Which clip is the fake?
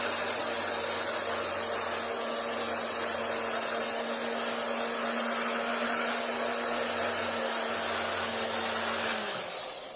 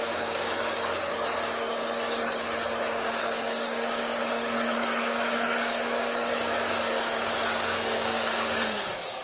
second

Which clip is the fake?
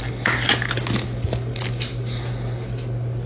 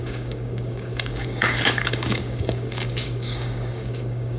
second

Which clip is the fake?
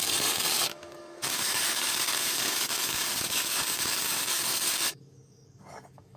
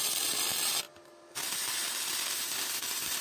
first